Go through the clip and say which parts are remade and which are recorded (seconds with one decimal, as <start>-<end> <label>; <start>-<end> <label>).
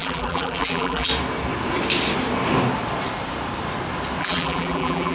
0.0-1.1 remade; 1.1-4.2 recorded; 4.2-5.1 remade